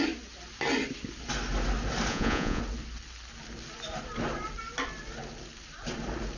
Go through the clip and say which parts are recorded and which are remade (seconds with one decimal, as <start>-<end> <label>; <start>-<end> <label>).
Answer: 0.0-2.1 recorded; 2.1-2.6 remade; 2.6-6.4 recorded